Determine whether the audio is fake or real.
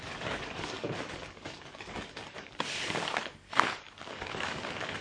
fake